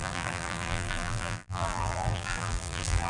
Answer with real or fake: fake